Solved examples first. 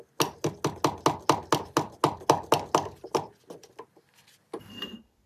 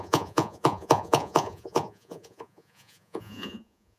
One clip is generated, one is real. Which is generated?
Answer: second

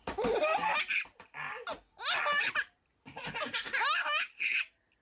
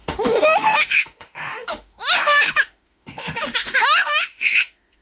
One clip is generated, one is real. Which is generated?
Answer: second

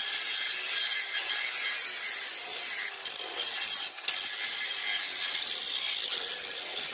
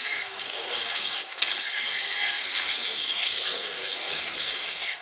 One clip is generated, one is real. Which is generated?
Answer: second